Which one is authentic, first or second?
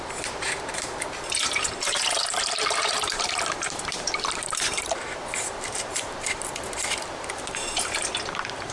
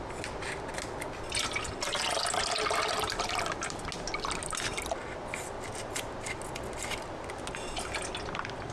second